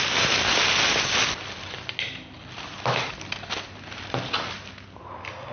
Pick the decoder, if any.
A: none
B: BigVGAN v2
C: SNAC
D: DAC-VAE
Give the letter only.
A